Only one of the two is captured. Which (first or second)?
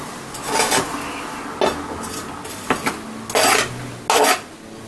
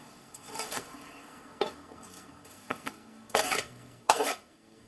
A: first